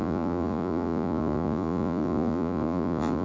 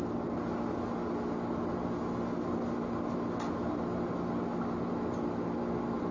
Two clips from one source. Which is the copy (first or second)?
first